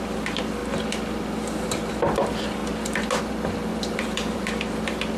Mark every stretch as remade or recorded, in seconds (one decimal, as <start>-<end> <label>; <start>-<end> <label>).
0.0-3.7 recorded; 3.7-5.2 remade

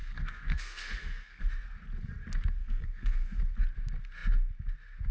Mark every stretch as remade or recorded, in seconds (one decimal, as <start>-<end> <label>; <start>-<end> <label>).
0.0-1.4 remade; 1.4-2.6 recorded; 2.6-3.4 remade; 3.4-5.1 recorded

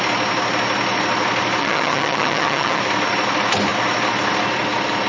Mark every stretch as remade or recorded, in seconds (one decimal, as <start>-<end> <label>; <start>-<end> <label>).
0.0-1.6 recorded; 1.6-2.8 remade; 2.8-5.1 recorded

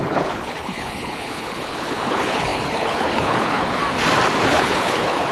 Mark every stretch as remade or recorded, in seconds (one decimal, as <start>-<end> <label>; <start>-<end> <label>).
0.0-3.8 remade; 3.8-4.4 recorded; 4.4-5.3 remade

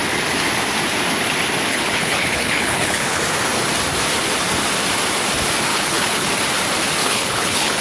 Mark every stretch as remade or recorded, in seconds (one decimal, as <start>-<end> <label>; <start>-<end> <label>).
0.0-1.7 recorded; 1.7-3.2 remade; 3.2-5.7 recorded; 5.7-6.3 remade; 6.3-7.0 recorded; 7.0-7.8 remade

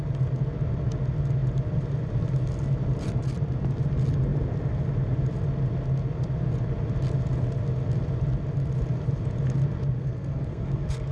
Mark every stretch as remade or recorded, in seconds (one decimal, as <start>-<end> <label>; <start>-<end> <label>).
0.0-10.0 recorded; 10.0-11.1 remade

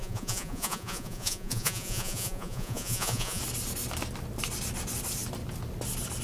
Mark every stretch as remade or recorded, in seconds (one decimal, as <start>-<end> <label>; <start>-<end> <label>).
0.0-3.4 remade; 3.4-6.2 recorded

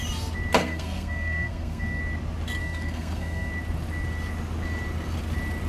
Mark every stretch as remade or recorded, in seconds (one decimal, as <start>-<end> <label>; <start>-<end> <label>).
0.0-0.6 recorded; 0.6-2.0 remade; 2.0-2.6 recorded; 2.6-3.5 remade; 3.5-5.7 recorded